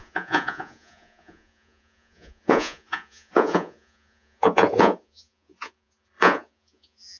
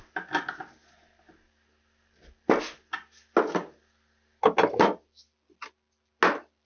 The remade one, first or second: first